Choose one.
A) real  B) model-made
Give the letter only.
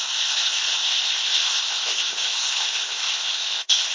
B